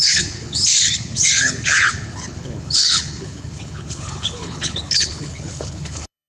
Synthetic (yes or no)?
yes